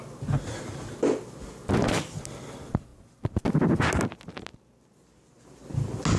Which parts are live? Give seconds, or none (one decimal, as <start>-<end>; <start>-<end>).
0.0-2.9; 3.5-6.2